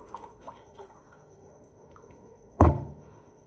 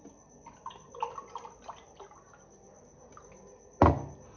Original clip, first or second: second